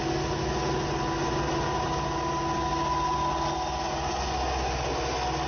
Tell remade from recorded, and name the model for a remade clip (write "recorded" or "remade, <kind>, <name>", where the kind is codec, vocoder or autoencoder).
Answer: recorded